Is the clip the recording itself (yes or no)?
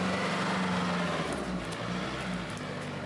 yes